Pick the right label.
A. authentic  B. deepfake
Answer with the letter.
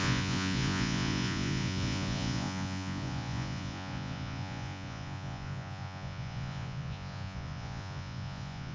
B